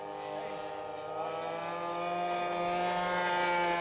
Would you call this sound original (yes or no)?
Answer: yes